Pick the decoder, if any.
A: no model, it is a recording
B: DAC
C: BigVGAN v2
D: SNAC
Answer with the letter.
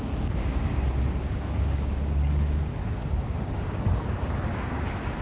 B